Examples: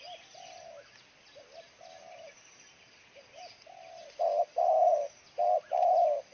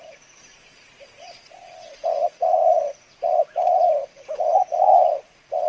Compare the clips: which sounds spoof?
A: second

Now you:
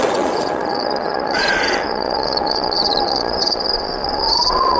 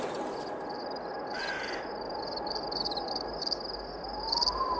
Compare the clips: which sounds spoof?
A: first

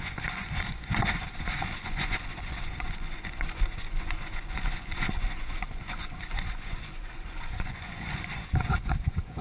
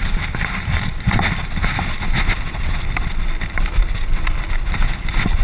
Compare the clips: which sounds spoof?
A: first